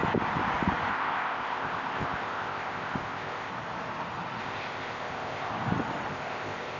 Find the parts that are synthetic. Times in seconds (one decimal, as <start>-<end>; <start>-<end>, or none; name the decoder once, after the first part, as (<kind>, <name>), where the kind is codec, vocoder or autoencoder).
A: 0.9-3.5 (codec, ZipCodec); 4.4-5.5; 6.1-6.8

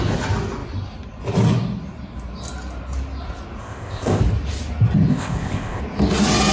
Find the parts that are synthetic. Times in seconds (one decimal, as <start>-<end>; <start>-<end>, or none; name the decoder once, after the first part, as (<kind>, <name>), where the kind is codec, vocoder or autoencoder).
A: 3.6-4.2 (codec, ZipCodec); 5.1-5.8

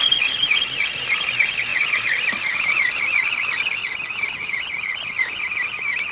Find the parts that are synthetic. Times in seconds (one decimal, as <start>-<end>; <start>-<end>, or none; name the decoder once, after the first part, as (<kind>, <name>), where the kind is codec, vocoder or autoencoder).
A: none

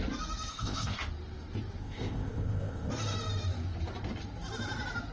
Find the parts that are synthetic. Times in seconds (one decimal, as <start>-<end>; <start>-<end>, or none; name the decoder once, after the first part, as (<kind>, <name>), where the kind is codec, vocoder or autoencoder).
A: 0.5-1.0 (codec, ZipCodec); 1.8-2.9

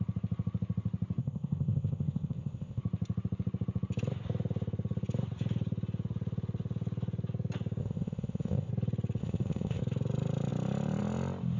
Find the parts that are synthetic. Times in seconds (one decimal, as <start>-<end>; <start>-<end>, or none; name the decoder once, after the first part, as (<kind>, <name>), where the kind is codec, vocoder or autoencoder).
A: 1.2-2.8 (codec, ZipCodec); 7.8-8.7; 9.2-9.8

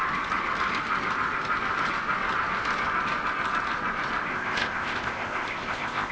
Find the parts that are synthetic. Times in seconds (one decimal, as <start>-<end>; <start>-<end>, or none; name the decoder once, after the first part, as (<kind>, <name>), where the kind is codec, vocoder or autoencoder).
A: 4.3-6.1 (codec, ZipCodec)

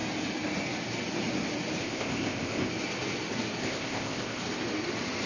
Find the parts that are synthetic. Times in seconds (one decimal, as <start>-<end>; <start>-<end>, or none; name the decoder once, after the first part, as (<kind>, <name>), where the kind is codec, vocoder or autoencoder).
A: 1.8-2.7 (codec, ZipCodec); 3.6-4.4

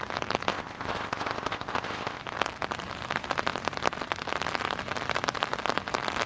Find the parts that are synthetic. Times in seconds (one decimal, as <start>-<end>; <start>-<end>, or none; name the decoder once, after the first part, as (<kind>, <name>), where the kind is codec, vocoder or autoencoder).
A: 0.5-2.2 (codec, ZipCodec)